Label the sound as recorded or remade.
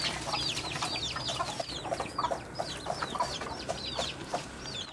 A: recorded